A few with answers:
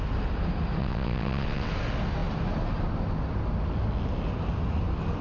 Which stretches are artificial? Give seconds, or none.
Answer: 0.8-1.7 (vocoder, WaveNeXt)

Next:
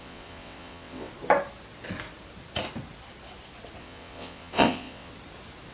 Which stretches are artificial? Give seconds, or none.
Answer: 0.0-1.1 (vocoder, WaveNeXt); 3.8-5.1

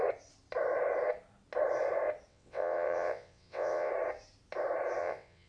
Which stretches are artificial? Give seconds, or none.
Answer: 2.3-3.9 (vocoder, WaveNeXt); 5.0-5.5

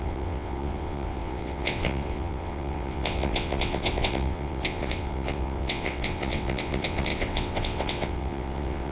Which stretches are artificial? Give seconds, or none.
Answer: 0.0-8.9 (vocoder, WaveNeXt)

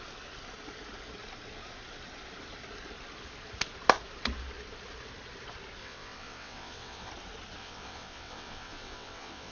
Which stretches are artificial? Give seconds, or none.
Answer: 5.8-7.1 (vocoder, WaveNeXt); 7.6-9.5

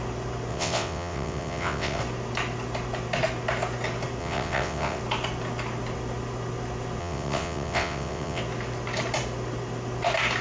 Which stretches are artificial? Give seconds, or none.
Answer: 0.5-2.0 (vocoder, WaveNeXt); 4.2-5.0; 7.0-8.4

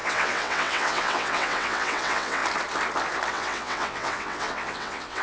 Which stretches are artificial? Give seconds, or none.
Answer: 0.0-2.4 (vocoder, WaveNeXt); 3.3-5.2

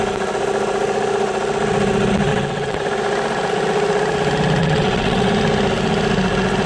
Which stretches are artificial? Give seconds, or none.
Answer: 2.3-2.8 (vocoder, WaveNeXt); 4.6-5.3